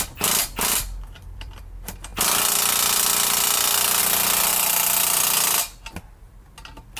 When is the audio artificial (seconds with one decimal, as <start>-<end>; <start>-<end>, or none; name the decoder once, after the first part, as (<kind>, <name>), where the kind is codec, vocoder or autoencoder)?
0.4-1.6 (vocoder, BigVGAN v2)